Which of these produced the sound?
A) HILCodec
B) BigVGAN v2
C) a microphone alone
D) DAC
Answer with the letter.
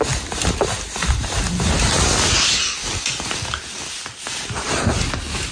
C